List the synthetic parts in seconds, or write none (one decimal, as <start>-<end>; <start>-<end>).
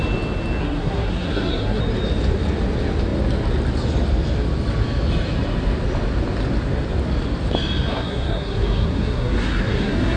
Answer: 0.6-1.8; 7.9-10.2